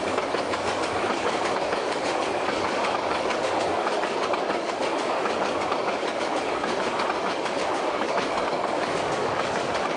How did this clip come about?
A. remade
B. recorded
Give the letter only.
A